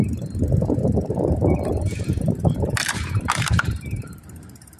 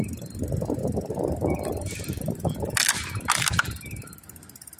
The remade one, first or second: first